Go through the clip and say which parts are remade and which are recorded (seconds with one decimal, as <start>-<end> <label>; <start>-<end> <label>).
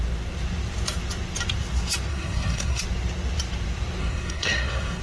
0.0-2.1 recorded; 2.1-2.8 remade; 2.8-4.0 recorded; 4.0-5.0 remade